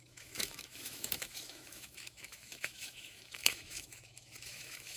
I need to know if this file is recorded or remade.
remade